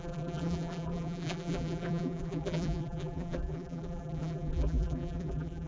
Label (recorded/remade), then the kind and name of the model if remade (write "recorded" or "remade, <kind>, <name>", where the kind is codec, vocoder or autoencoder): remade, vocoder, BigVGAN v2